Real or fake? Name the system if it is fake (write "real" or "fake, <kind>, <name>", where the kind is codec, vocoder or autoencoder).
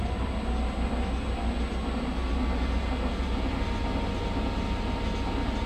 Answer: real